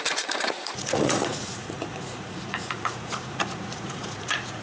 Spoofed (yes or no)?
yes